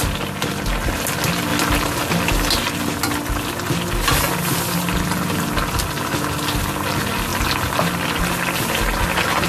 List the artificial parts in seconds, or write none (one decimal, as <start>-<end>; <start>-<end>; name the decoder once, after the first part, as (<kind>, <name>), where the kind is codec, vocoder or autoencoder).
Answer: none